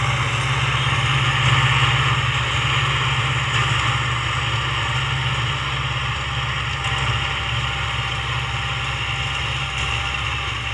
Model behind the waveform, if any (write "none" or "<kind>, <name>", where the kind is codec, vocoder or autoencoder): none